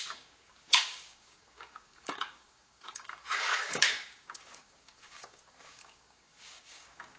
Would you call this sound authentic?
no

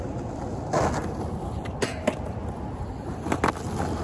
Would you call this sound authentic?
yes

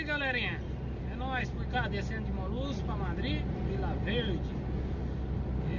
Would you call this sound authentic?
yes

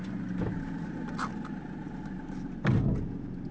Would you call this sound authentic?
yes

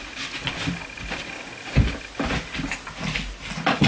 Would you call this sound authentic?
yes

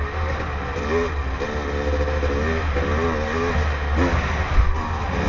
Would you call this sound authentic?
yes